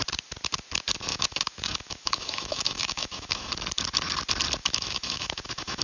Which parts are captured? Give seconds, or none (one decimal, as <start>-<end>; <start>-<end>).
0.0-1.1; 3.5-4.6